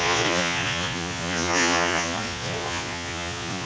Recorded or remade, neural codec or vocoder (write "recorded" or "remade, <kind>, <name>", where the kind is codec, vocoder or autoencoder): remade, vocoder, Vocos